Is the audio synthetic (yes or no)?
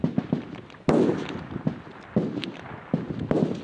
no